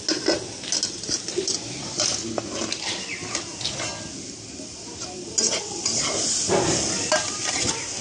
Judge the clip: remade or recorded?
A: recorded